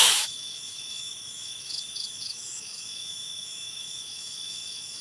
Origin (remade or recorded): remade